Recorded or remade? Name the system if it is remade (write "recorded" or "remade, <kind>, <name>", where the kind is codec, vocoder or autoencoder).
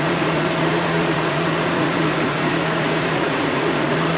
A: remade, vocoder, Vocos